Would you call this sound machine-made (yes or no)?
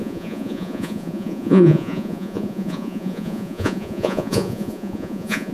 yes